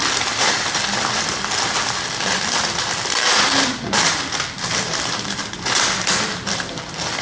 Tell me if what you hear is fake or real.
fake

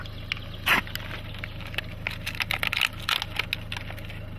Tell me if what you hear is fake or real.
real